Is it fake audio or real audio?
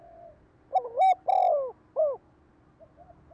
real